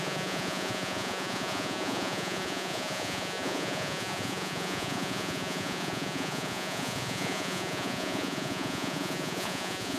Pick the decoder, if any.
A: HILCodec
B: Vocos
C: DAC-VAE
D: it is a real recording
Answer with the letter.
B